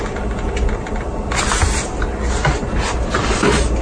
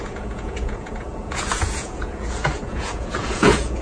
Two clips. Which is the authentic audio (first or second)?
first